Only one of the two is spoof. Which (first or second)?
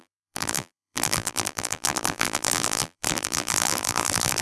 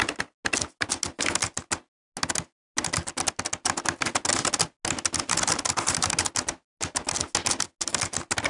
first